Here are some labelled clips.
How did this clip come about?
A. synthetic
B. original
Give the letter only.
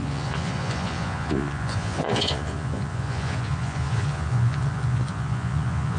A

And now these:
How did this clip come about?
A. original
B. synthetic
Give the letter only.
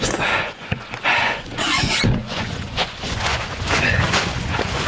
B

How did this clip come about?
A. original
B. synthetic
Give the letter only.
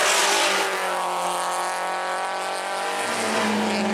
A